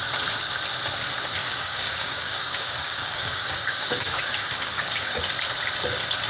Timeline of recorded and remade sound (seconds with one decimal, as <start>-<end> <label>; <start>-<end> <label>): 0.0-1.4 recorded; 1.4-5.2 remade; 5.2-6.3 recorded